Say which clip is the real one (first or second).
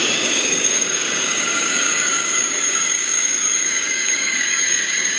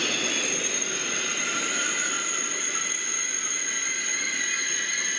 second